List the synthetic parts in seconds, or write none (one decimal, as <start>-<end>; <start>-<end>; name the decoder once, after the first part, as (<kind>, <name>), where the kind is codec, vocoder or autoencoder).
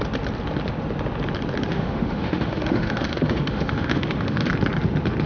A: 1.7-4.5 (autoencoder, DAC-VAE)